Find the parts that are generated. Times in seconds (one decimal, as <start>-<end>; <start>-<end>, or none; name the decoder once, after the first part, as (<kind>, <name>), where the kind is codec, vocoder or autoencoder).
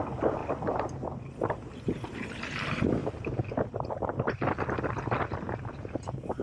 none